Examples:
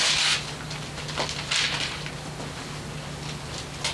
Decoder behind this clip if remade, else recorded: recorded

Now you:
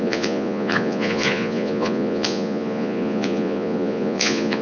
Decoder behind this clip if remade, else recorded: remade, vocoder, Vocos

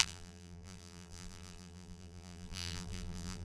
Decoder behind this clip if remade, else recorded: remade, vocoder, BigVGAN v2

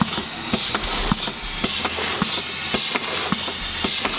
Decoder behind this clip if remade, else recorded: recorded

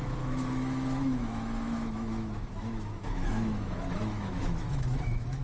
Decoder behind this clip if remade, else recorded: remade, autoencoder, DAC-VAE